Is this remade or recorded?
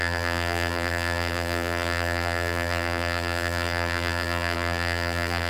remade